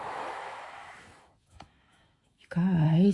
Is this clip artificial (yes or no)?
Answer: yes